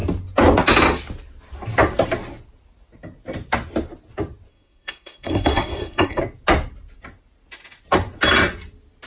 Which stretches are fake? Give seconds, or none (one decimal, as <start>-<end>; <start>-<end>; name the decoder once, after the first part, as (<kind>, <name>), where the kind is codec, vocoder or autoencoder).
4.5-6.2 (codec, SNAC)